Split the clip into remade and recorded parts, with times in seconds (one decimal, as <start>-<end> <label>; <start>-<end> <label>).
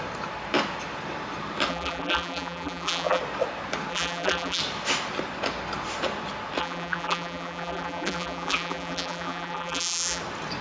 0.0-1.7 recorded; 1.7-3.2 remade; 3.2-3.9 recorded; 3.9-4.6 remade; 4.6-6.6 recorded; 6.6-10.2 remade; 10.2-10.6 recorded